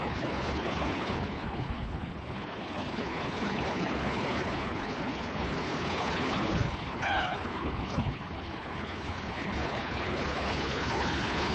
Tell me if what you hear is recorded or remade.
remade